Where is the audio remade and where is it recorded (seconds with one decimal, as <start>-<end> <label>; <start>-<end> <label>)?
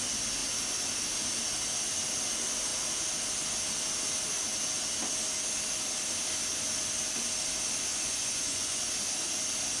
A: 0.0-7.9 recorded; 7.9-8.8 remade; 8.8-9.8 recorded